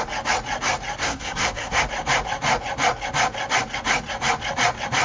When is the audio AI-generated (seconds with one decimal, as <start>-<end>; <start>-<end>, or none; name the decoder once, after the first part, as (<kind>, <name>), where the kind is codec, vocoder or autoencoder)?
1.0-1.8 (codec, SNAC)